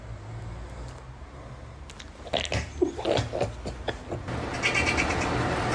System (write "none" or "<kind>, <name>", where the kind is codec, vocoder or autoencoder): none